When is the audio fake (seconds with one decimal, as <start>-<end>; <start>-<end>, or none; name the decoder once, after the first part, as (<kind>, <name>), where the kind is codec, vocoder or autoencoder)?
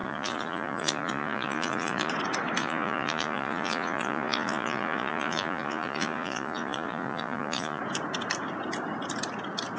0.0-2.1 (vocoder, Vocos); 2.6-7.8